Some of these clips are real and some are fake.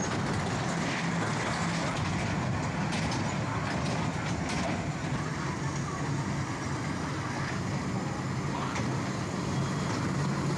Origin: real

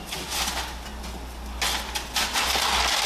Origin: real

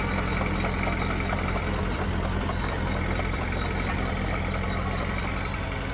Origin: real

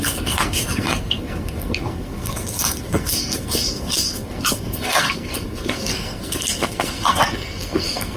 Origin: fake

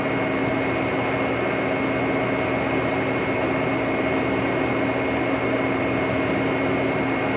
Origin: real